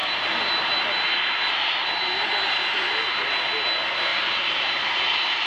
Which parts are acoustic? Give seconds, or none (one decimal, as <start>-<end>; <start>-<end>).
1.9-5.5